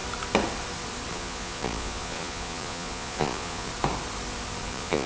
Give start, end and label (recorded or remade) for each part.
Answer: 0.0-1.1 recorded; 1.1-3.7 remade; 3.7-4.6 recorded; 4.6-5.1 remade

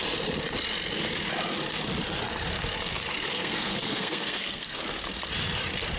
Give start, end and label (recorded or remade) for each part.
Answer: 0.0-3.1 recorded; 3.1-4.8 remade; 4.8-6.0 recorded

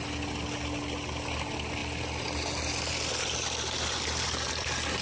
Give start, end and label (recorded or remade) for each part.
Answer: 0.0-5.0 recorded

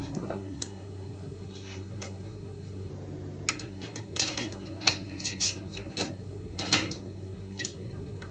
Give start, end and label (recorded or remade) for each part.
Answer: 0.0-2.9 remade; 2.9-3.5 recorded; 3.5-8.3 remade

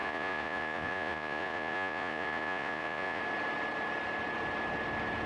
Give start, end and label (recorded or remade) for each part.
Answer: 0.0-3.2 remade; 3.2-5.3 recorded

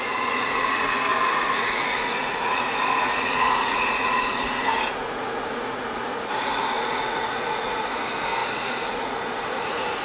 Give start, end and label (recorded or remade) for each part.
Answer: 0.0-10.0 remade

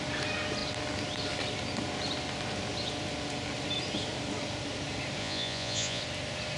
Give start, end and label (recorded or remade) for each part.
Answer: 0.0-5.2 recorded; 5.2-6.0 remade; 6.0-6.6 recorded